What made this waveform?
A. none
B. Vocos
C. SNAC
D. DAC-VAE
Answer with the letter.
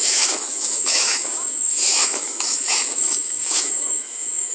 D